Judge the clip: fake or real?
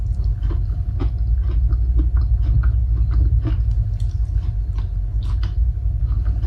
real